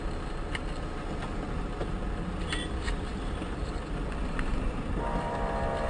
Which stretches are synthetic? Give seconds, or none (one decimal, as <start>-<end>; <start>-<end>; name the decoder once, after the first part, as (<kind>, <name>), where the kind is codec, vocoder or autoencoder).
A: 0.0-0.6 (vocoder, BigVGAN v2); 2.7-5.9